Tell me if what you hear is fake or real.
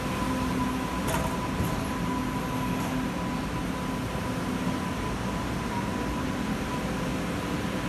real